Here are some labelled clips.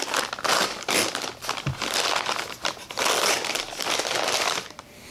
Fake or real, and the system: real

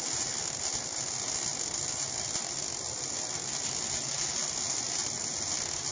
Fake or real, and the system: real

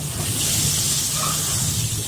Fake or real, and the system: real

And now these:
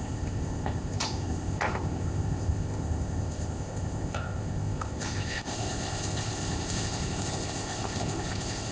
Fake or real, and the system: fake, codec, ZipCodec